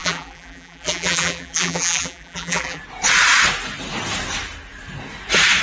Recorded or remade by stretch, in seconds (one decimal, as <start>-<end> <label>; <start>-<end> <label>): 0.0-2.8 remade; 2.8-5.6 recorded